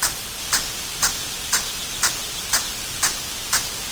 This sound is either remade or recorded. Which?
remade